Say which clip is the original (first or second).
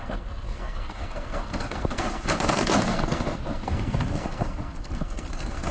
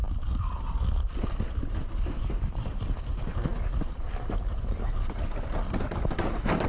second